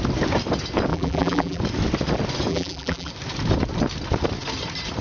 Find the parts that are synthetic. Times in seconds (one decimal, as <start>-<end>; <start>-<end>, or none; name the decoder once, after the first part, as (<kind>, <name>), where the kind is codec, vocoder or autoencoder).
0.9-1.6 (vocoder, BigVGAN v2); 2.5-3.1

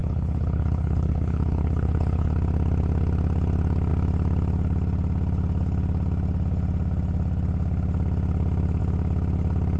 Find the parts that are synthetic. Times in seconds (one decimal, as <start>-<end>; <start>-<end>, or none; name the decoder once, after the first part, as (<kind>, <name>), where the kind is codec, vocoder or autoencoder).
0.0-2.3 (codec, HILCodec)

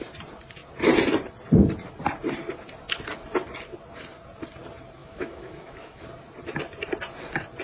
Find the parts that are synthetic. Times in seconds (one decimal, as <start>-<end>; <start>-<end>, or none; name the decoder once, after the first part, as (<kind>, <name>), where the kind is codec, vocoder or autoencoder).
5.0-6.0 (autoencoder, DAC-VAE)

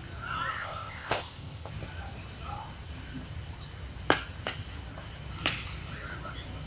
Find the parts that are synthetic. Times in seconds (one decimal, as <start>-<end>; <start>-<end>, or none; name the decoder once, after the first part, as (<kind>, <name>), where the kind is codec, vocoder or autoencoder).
0.5-1.7 (codec, ZipCodec)

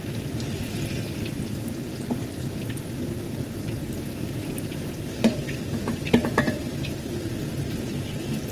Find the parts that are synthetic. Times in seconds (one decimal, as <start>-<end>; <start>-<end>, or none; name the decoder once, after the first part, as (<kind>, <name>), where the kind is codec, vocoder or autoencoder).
4.1-7.3 (vocoder, BigVGAN v2)